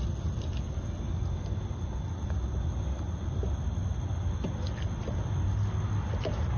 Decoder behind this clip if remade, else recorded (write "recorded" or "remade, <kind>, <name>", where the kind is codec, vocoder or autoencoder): recorded